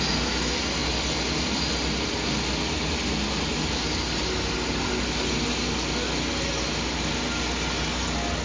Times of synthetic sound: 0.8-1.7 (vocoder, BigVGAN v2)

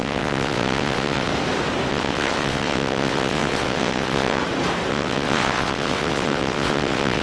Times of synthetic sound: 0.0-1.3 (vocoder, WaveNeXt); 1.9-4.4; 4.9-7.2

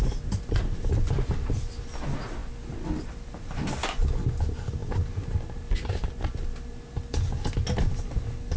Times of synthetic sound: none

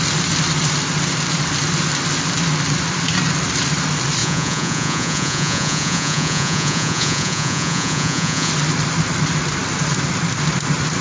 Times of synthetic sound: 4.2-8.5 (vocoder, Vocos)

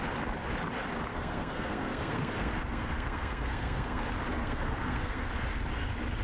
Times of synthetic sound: 1.1-4.0 (codec, SNAC); 4.4-5.3